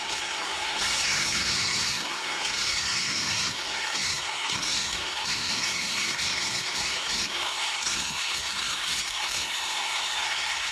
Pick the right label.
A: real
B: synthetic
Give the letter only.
B